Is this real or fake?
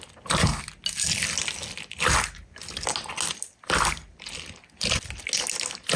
real